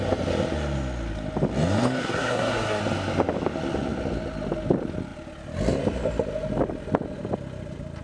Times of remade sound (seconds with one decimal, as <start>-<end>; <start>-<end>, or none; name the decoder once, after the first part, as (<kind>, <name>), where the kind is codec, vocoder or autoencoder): 2.0-2.8 (codec, SNAC)